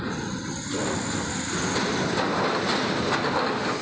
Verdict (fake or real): real